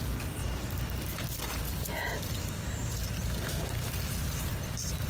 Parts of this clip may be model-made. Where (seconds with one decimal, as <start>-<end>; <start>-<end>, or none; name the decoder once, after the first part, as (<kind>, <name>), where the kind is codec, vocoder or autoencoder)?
0.0-0.4 (vocoder, BigVGAN v2); 1.5-2.8; 4.1-5.1